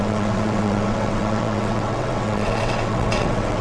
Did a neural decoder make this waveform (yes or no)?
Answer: yes